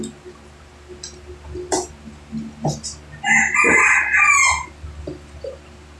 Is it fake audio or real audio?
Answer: real